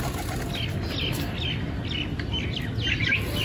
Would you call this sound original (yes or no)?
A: yes